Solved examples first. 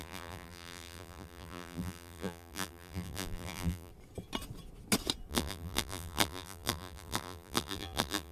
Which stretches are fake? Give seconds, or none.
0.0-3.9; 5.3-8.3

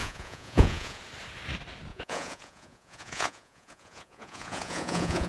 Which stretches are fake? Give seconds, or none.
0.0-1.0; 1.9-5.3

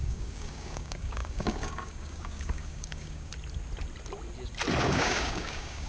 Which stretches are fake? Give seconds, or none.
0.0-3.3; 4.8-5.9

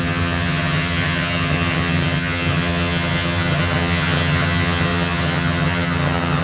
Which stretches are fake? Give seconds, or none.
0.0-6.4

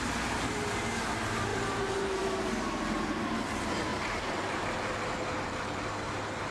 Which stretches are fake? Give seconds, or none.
1.5-2.5; 3.9-6.5

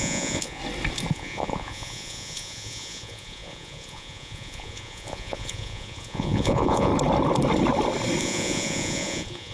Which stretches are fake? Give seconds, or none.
0.0-0.6; 1.1-6.9; 8.2-9.5

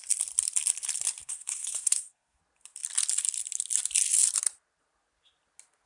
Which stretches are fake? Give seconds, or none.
1.2-2.4

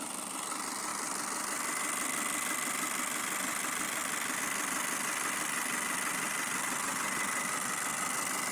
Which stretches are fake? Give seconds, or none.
none